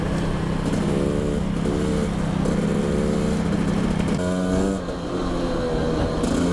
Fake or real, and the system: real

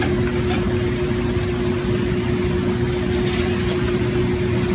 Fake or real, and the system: real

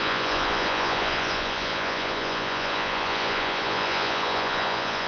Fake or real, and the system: fake, vocoder, Vocos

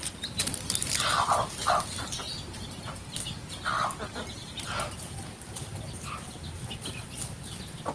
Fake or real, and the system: real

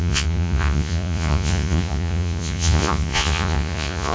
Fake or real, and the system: fake, vocoder, Vocos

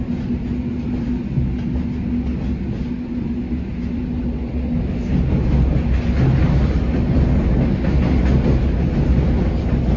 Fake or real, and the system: real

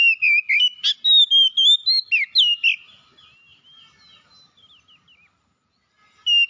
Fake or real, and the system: real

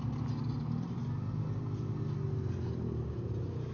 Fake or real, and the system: real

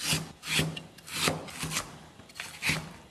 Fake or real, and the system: real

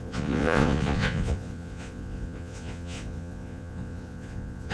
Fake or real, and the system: fake, vocoder, Vocos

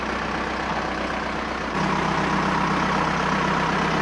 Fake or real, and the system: real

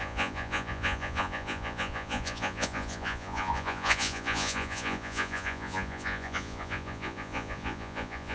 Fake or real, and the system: fake, vocoder, Vocos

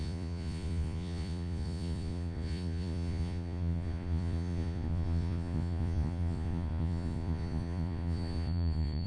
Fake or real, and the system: fake, vocoder, Vocos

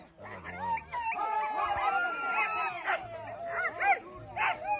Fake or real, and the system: real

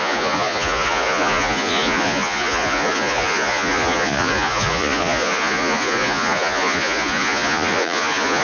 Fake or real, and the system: fake, vocoder, Vocos